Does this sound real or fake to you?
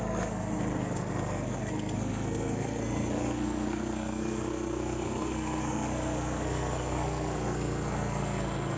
fake